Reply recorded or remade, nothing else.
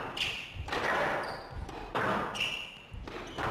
recorded